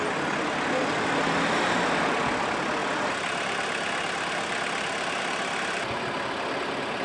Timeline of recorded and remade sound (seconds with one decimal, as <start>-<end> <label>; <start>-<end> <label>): 0.0-7.0 recorded